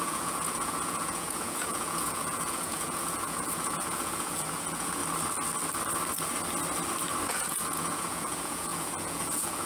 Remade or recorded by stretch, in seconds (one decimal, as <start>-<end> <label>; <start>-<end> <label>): 0.0-5.0 remade; 5.0-7.3 recorded; 7.3-9.7 remade

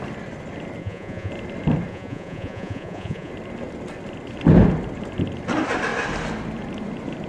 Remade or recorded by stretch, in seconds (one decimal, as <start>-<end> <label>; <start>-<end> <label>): 0.0-0.8 recorded; 0.8-1.3 remade; 1.3-1.9 recorded; 1.9-3.3 remade; 3.3-7.3 recorded

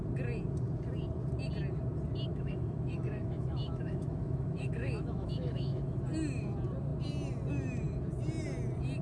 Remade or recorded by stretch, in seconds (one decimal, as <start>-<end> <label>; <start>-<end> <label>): 0.0-2.3 recorded; 2.3-6.0 remade; 6.0-9.0 recorded

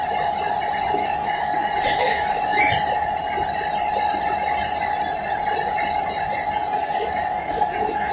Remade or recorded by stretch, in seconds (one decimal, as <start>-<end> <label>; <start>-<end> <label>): 0.0-1.0 recorded; 1.0-2.7 remade; 2.7-6.6 recorded; 6.6-8.1 remade

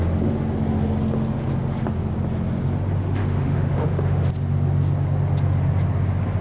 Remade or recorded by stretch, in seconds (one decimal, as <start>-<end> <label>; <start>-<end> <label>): 0.0-3.2 recorded; 3.2-4.3 remade; 4.3-6.4 recorded

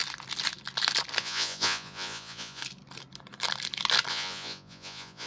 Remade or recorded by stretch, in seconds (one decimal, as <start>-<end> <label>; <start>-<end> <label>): 0.0-1.2 recorded; 1.2-2.6 remade; 2.6-4.1 recorded; 4.1-5.3 remade

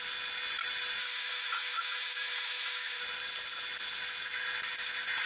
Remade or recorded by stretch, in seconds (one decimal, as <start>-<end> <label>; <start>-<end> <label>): 0.0-1.0 recorded; 1.0-3.0 remade; 3.0-5.3 recorded

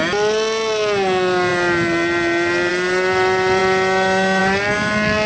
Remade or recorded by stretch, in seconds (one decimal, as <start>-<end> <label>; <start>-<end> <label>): 0.0-5.3 recorded